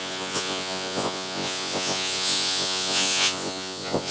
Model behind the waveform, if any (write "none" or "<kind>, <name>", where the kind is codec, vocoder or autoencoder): vocoder, Vocos